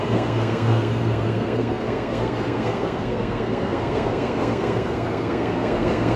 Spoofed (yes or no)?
yes